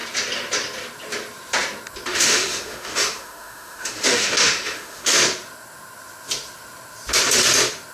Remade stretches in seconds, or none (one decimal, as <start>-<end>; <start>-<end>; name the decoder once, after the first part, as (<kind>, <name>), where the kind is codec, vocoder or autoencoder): 2.1-5.1 (autoencoder, DAC-VAE)